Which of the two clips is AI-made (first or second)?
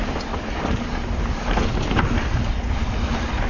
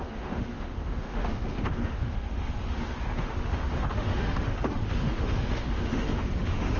second